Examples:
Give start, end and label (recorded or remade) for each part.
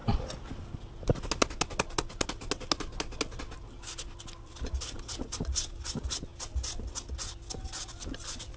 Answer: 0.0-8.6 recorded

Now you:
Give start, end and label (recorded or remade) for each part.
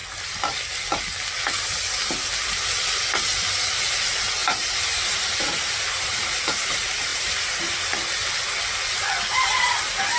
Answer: 0.0-4.4 recorded; 4.4-6.4 remade; 6.4-7.1 recorded; 7.1-7.6 remade; 7.6-10.2 recorded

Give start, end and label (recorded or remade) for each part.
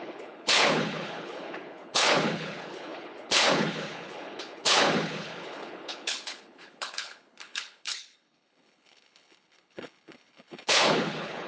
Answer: 0.0-11.5 remade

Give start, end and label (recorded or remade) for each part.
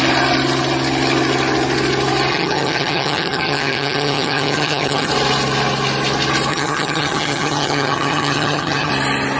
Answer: 0.0-2.3 recorded; 2.3-5.1 remade; 5.1-6.5 recorded; 6.5-8.9 remade; 8.9-9.4 recorded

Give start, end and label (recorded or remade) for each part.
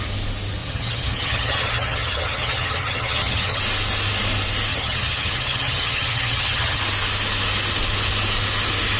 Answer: 0.0-0.6 recorded; 0.6-3.6 remade; 3.6-4.7 recorded; 4.7-6.8 remade; 6.8-9.0 recorded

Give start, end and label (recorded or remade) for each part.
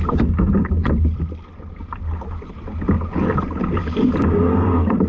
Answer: 0.0-5.1 recorded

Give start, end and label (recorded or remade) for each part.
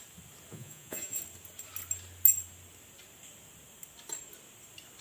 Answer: 0.0-0.5 recorded; 0.5-1.2 remade; 1.2-5.0 recorded